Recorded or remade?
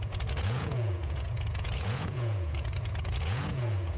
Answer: remade